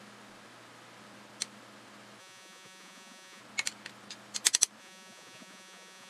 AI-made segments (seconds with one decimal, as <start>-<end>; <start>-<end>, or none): 2.2-3.4; 4.8-6.1